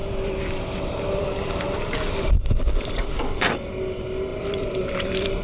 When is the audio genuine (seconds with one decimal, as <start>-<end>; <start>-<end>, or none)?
3.2-4.3